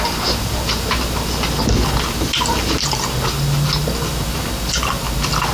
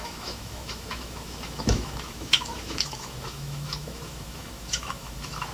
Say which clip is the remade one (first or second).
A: second